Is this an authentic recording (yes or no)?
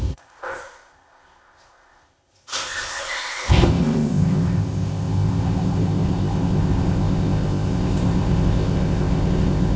no